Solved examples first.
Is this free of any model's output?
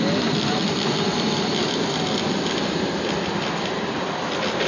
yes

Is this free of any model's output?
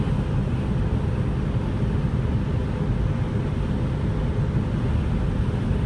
yes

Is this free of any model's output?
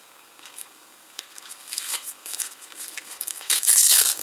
no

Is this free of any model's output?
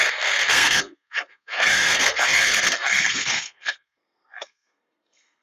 no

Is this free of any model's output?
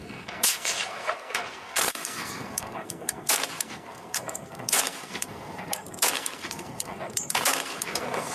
no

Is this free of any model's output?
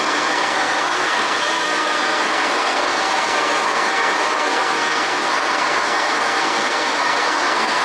no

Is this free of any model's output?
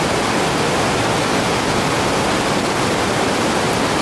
yes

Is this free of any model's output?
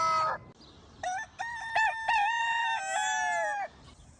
yes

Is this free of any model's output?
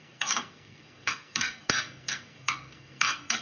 no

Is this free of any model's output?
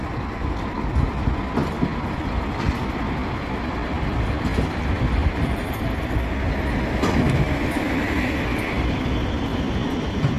yes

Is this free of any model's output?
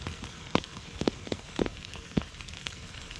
no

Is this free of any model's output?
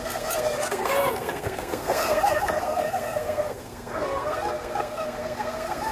no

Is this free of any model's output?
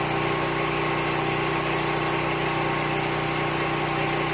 yes